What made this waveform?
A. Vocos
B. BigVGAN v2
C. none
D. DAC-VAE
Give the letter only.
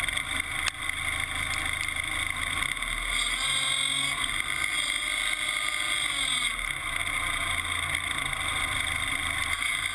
C